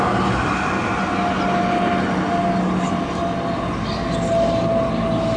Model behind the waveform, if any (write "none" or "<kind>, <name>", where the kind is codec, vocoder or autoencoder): none